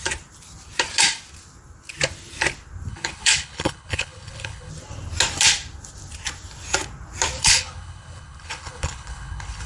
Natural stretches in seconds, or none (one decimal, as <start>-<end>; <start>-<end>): 0.0-2.9; 4.7-7.4